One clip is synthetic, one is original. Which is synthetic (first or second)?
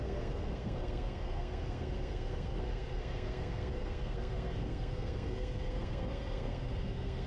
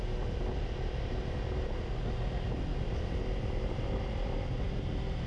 first